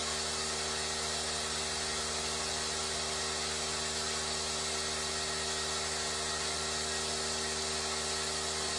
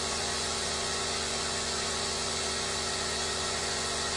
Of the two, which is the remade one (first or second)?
second